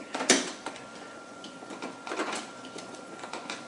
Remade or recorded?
remade